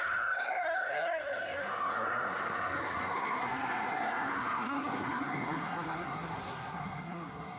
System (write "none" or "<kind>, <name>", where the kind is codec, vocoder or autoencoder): codec, SNAC